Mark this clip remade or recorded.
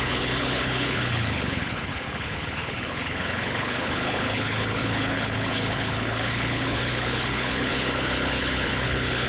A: remade